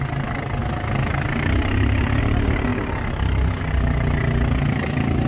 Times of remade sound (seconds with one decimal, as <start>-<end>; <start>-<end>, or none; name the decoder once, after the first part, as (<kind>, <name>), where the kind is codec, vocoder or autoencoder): none